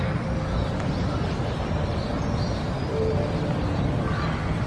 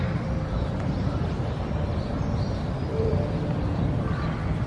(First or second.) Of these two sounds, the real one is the first